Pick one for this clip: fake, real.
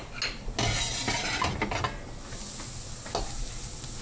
real